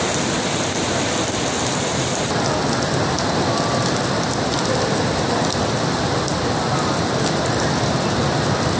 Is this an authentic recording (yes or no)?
yes